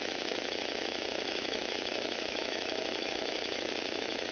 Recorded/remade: remade